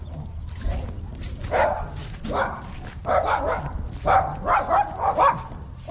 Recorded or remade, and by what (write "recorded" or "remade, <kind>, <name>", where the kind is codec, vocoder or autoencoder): recorded